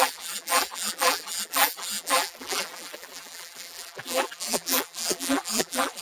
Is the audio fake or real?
fake